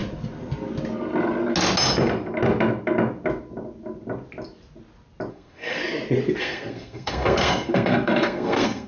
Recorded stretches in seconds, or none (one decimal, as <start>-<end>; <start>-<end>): 0.0-5.3; 5.8-6.4